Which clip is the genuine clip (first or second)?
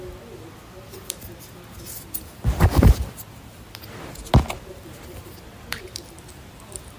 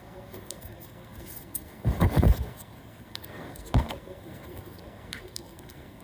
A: first